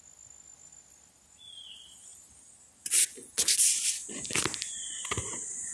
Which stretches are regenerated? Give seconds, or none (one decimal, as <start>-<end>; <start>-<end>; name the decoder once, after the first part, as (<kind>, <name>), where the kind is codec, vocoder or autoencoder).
none